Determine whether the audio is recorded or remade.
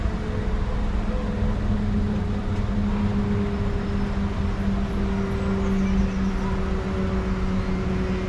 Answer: recorded